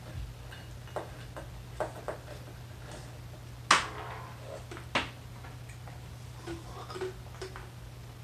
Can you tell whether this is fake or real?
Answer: real